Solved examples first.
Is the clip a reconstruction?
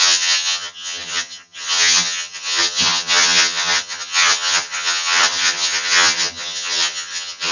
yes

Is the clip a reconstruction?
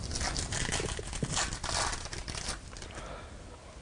no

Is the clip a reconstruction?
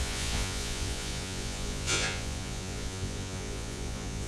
yes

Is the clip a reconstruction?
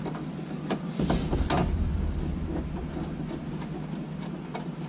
no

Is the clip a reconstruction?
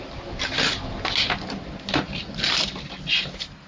no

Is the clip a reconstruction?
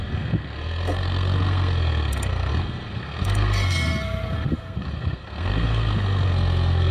yes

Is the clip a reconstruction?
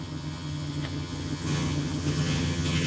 yes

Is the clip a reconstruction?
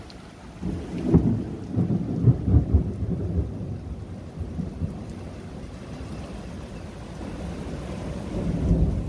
no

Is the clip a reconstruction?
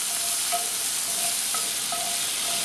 no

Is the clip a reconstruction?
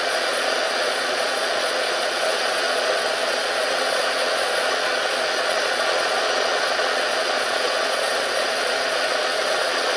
yes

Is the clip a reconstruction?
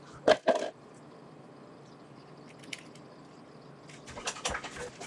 no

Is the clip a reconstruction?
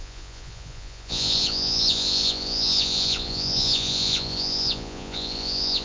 yes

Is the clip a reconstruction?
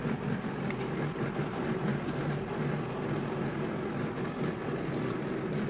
no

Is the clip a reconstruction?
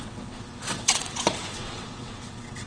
yes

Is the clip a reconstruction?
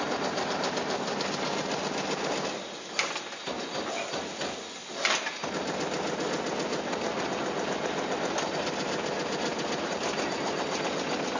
no